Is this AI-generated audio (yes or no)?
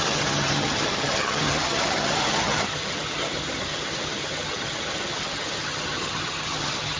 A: yes